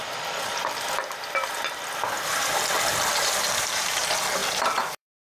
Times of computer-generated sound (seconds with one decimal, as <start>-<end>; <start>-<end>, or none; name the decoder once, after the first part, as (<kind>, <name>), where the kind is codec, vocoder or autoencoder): 3.2-5.3 (vocoder, BigVGAN v2)